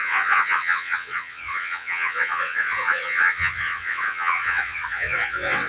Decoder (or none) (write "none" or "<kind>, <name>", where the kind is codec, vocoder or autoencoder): vocoder, WaveNeXt